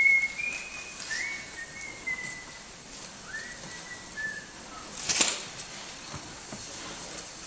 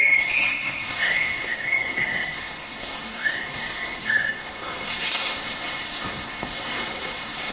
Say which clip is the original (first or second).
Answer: first